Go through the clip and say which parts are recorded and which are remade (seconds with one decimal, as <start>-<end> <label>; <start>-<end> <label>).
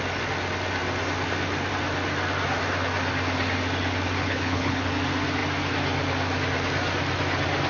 0.0-4.2 recorded; 4.2-4.9 remade; 4.9-7.7 recorded